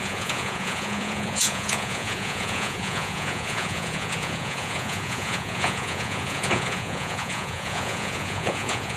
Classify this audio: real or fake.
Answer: fake